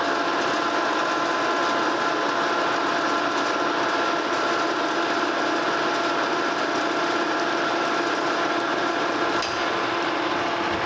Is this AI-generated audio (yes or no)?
no